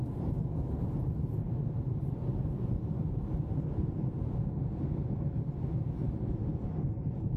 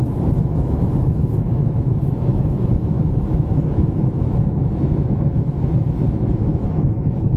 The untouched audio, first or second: first